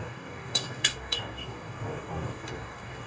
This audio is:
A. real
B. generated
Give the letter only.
B